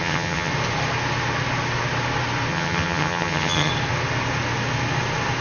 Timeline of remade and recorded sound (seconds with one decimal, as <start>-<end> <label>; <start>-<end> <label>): 0.0-0.5 remade; 0.5-2.5 recorded; 2.5-3.7 remade; 3.7-5.4 recorded

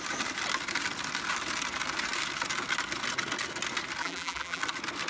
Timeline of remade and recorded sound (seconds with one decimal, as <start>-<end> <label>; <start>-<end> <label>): 0.0-4.0 recorded; 4.0-4.6 remade; 4.6-5.1 recorded

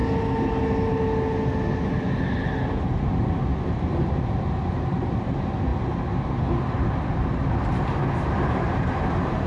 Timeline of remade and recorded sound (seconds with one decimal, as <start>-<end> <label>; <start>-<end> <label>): 0.0-2.8 recorded; 2.8-3.5 remade; 3.5-5.0 recorded; 5.0-9.5 remade

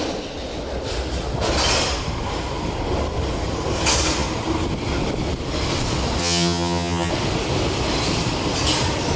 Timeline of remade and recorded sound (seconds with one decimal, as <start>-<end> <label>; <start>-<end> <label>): 0.0-6.2 recorded; 6.2-7.1 remade; 7.1-9.2 recorded